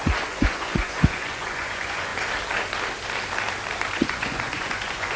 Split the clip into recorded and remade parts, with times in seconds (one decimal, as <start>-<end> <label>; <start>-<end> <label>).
0.0-2.1 remade; 2.1-3.9 recorded; 3.9-5.2 remade